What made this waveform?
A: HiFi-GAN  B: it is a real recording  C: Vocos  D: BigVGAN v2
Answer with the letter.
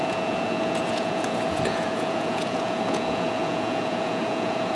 C